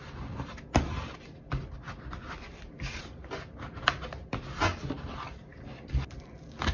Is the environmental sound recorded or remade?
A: recorded